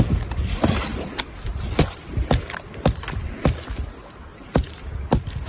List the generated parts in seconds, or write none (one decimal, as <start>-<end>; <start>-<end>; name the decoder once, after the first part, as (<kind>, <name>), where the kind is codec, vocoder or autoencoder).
1.5-2.1 (vocoder, BigVGAN v2); 4.3-4.9